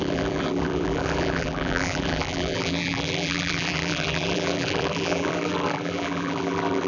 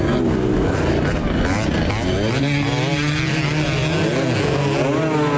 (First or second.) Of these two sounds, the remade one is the first